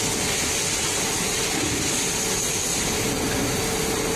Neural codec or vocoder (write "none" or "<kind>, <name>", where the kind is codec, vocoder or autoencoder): none